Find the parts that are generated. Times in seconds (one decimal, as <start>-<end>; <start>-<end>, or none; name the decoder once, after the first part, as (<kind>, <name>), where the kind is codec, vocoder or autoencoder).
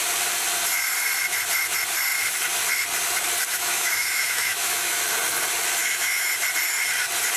3.5-5.0 (autoencoder, DAC-VAE); 5.8-6.3